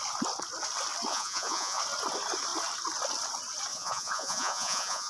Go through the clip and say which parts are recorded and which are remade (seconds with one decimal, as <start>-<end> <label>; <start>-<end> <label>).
0.0-1.1 recorded; 1.1-1.8 remade; 1.8-3.7 recorded; 3.7-5.1 remade